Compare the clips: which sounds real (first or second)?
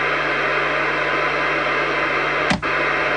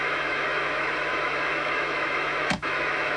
first